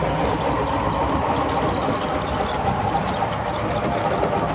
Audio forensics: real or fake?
real